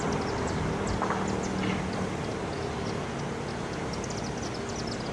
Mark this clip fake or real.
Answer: real